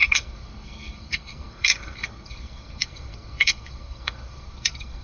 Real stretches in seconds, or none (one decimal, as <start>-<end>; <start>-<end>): none